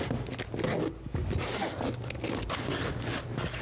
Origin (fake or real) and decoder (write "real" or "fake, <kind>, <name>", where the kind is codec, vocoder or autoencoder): real